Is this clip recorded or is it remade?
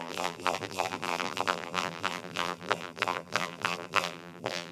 remade